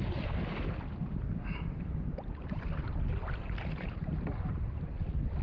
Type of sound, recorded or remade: recorded